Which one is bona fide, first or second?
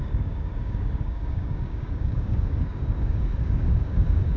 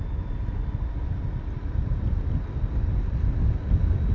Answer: second